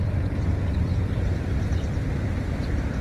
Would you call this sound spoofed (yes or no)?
yes